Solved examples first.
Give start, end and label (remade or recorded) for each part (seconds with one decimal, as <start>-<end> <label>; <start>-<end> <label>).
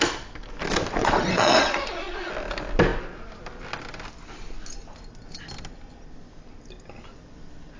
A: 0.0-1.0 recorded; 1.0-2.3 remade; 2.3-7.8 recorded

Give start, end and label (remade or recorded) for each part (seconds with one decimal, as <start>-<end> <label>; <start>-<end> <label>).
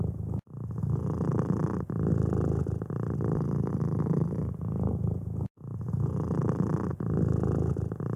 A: 0.0-4.9 recorded; 4.9-6.1 remade; 6.1-6.9 recorded; 6.9-7.7 remade; 7.7-8.2 recorded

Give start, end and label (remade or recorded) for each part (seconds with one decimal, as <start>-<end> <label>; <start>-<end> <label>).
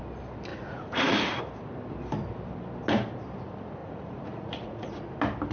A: 0.0-0.5 recorded; 0.5-1.4 remade; 1.4-3.8 recorded; 3.8-4.9 remade; 4.9-5.5 recorded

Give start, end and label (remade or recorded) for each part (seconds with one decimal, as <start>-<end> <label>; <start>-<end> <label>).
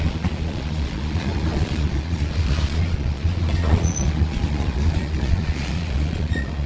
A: 0.0-6.7 remade